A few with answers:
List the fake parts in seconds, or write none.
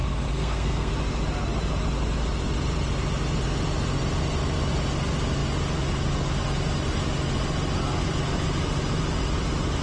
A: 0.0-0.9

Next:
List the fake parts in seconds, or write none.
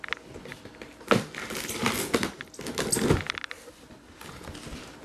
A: none